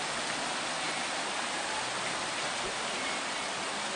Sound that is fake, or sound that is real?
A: real